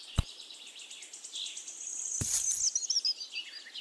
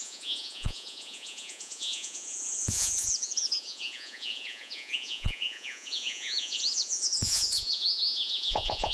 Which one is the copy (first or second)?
second